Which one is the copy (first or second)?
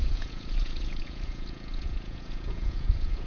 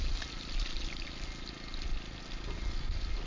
first